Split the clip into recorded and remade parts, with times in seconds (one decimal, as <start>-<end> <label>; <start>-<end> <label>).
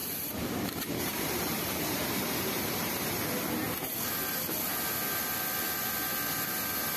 0.0-3.2 remade; 3.2-7.0 recorded